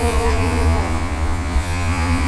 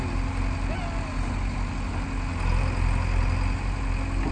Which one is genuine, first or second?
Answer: second